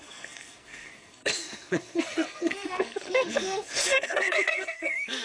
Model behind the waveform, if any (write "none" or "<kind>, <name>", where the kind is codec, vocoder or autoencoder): codec, SNAC